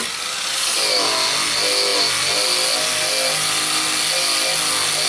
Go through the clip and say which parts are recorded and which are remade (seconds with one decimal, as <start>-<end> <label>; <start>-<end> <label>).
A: 0.0-5.1 recorded